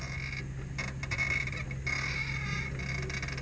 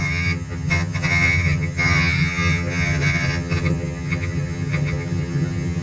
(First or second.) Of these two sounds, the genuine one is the first